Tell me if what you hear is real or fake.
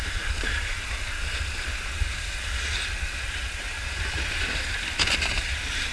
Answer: real